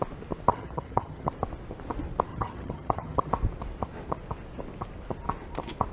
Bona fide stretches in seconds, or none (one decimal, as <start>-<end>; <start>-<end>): 0.0-0.5; 1.3-2.3; 3.3-5.9